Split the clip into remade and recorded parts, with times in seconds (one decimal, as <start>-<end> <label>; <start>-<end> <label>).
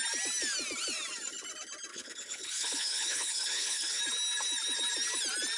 0.0-1.9 recorded; 1.9-4.0 remade; 4.0-5.6 recorded